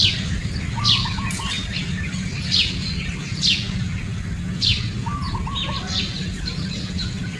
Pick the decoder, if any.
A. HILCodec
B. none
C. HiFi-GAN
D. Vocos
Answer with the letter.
B